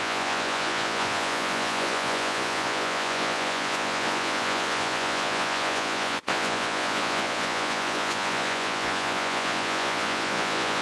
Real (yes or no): no